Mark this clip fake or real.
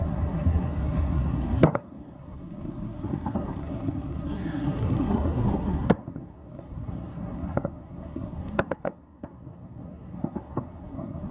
fake